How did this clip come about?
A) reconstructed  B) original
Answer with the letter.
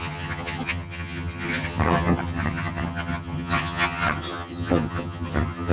A